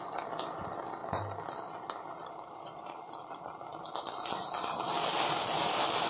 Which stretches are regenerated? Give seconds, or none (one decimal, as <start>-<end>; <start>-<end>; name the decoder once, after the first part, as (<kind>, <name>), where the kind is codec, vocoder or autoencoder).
none